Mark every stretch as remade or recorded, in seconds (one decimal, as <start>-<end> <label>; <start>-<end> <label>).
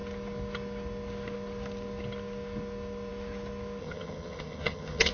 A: 0.0-3.8 recorded; 3.8-5.1 remade